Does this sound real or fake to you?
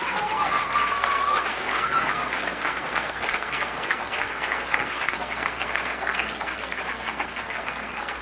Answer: fake